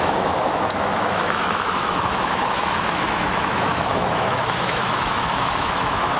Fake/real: fake